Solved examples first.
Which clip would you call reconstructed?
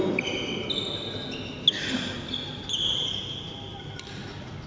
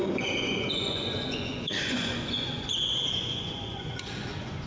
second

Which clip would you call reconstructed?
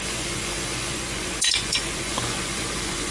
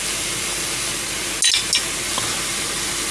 first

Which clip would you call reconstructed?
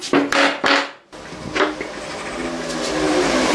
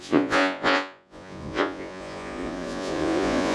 second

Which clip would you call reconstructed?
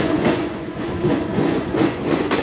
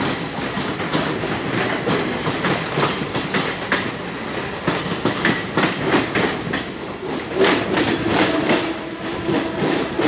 first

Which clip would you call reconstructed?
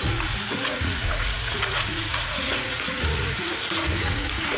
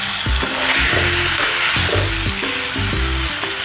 first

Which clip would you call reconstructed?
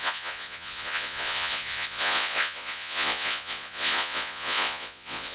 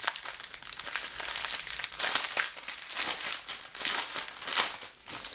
first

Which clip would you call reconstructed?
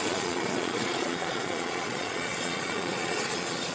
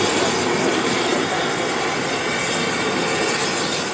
first